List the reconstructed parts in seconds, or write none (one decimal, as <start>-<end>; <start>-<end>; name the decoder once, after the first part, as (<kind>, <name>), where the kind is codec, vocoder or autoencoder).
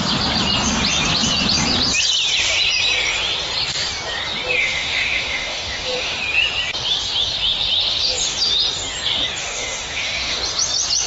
4.6-6.2 (autoencoder, DAC-VAE); 9.4-10.4